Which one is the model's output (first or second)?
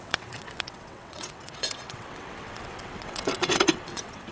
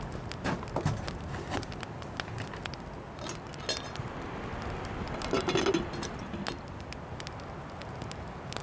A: first